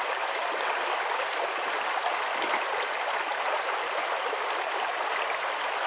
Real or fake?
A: real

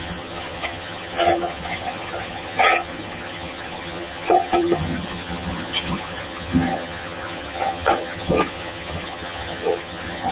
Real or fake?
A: fake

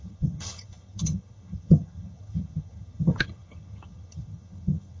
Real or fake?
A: fake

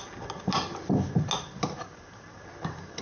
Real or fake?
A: real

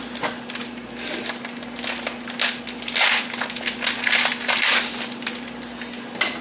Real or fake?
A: real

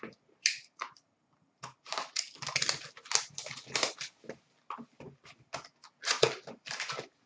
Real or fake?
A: real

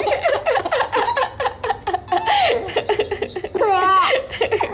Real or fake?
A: real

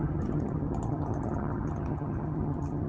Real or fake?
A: fake